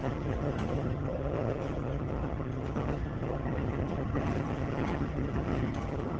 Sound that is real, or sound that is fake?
fake